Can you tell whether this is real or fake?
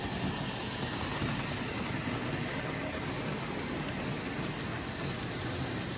real